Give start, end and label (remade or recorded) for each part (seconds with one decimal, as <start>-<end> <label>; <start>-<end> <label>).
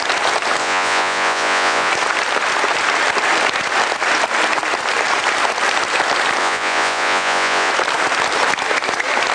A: 0.0-0.6 recorded; 0.6-1.9 remade; 1.9-6.4 recorded; 6.4-7.7 remade; 7.7-9.3 recorded